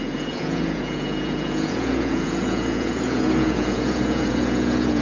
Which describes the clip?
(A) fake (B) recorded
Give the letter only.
A